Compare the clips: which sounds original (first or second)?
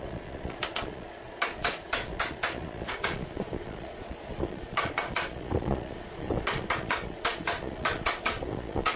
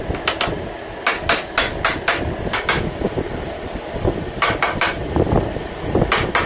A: second